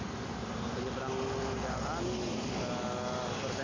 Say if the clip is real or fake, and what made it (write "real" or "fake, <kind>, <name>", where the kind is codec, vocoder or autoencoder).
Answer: real